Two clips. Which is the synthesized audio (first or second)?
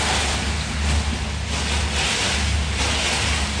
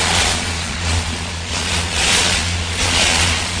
second